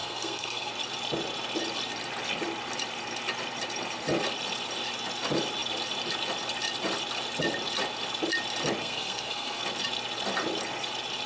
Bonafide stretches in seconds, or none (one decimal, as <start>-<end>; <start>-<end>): 0.7-8.8; 9.6-11.3